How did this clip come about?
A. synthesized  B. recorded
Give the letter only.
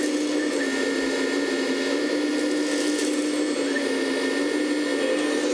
B